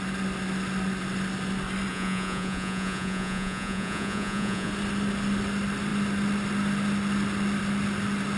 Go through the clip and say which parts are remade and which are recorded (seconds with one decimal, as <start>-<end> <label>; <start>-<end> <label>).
0.0-1.9 recorded; 1.9-4.7 remade; 4.7-8.4 recorded